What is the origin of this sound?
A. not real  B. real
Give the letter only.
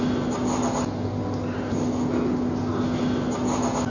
B